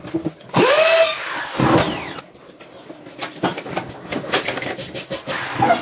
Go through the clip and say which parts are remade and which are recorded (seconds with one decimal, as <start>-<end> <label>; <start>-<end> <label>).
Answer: 0.0-5.8 recorded